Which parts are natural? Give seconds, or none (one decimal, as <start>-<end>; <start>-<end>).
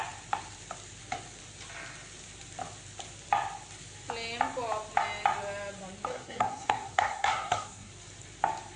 0.0-6.1; 7.9-8.8